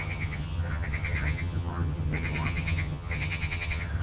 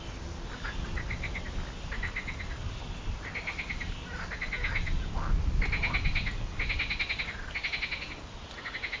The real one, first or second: second